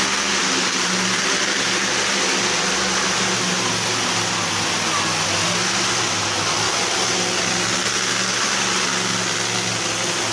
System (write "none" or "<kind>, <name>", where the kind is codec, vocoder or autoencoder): none